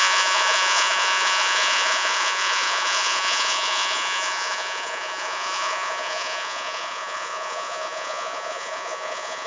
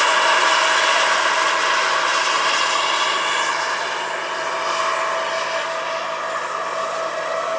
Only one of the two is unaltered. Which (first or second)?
second